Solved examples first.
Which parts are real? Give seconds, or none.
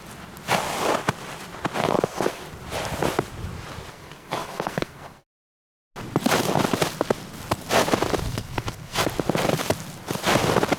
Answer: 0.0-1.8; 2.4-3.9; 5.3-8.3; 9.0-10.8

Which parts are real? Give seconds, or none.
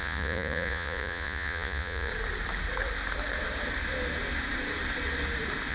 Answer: 2.1-5.7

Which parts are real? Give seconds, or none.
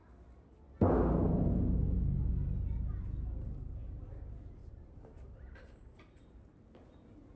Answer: 0.0-4.6; 6.2-7.4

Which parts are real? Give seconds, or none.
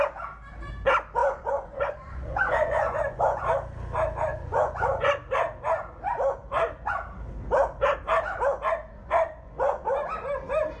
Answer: 0.0-1.2; 3.4-4.3; 5.1-9.0; 10.0-10.8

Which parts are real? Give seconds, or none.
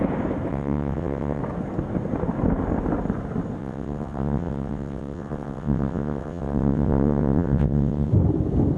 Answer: 0.0-0.5; 1.4-3.6; 8.1-8.8